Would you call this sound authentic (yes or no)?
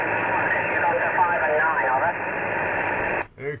yes